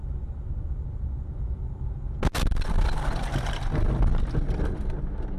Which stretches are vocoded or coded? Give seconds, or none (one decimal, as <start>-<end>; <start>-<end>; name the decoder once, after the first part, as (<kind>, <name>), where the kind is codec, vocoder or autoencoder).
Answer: none